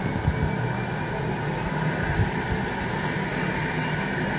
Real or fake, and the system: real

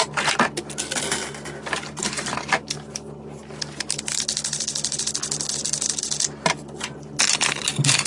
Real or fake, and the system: real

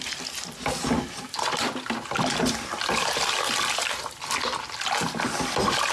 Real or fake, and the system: real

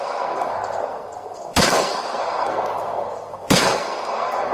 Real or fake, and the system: fake, codec, SNAC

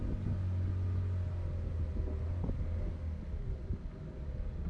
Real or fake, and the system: real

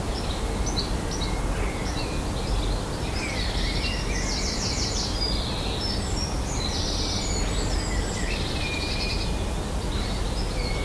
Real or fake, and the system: real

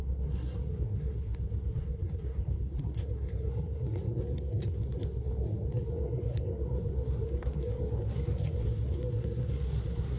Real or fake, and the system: fake, codec, SNAC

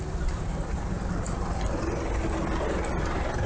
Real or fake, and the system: real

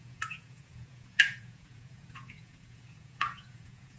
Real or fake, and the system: fake, vocoder, Vocos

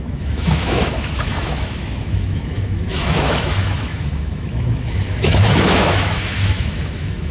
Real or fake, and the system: fake, autoencoder, DAC-VAE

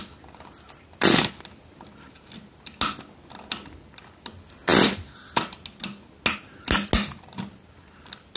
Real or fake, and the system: real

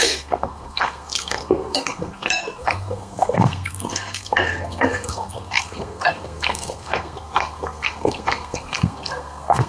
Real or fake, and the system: fake, codec, SNAC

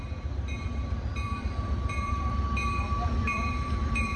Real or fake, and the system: fake, vocoder, BigVGAN v2